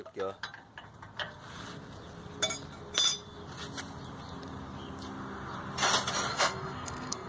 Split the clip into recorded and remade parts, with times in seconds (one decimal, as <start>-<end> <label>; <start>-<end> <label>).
0.0-6.3 recorded; 6.3-7.3 remade